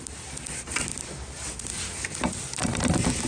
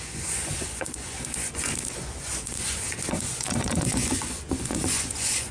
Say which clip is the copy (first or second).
second